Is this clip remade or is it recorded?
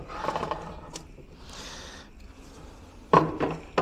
remade